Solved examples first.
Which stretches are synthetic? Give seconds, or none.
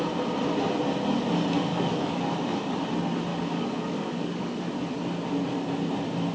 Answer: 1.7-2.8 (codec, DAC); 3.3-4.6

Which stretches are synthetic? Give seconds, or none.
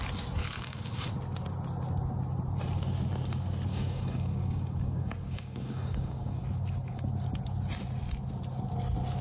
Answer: 0.4-1.1 (codec, DAC); 3.7-6.4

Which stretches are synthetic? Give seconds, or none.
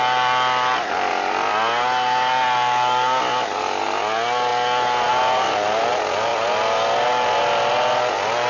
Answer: none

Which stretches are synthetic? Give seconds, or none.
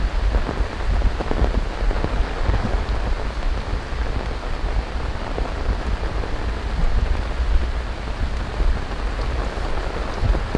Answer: 2.1-2.8 (codec, DAC)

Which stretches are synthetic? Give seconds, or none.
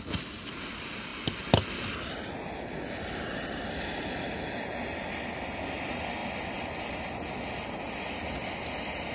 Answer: none